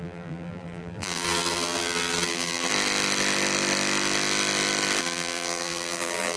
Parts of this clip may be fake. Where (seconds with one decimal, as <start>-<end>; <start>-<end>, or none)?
0.0-2.7; 5.0-6.4